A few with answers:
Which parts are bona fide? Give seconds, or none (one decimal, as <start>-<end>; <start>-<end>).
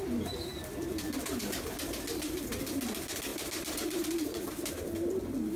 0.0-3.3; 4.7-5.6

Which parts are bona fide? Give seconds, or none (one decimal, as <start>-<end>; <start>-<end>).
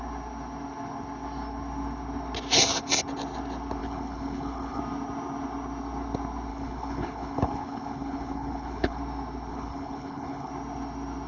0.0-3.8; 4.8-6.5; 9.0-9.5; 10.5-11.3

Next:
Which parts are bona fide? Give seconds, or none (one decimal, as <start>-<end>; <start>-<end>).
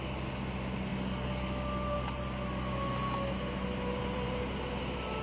0.0-5.2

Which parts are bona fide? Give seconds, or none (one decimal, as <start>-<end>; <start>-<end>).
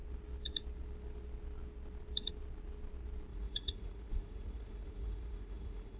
0.0-3.3